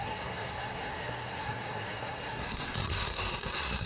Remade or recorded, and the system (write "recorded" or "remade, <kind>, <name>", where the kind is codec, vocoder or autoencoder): remade, codec, SNAC